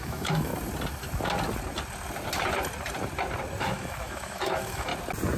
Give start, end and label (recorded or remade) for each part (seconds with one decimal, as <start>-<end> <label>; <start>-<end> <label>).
0.0-0.5 remade; 0.5-3.6 recorded; 3.6-4.9 remade; 4.9-5.4 recorded

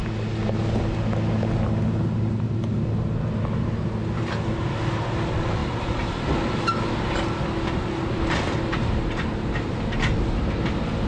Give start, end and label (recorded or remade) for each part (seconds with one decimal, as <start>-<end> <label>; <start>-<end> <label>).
0.0-11.1 recorded

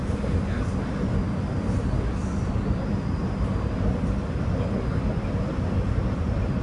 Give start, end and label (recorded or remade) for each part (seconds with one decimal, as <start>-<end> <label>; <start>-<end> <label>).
0.0-6.6 recorded

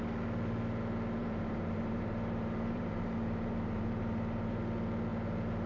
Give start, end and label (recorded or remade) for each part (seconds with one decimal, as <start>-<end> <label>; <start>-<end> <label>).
0.0-1.2 recorded; 1.2-4.6 remade; 4.6-5.7 recorded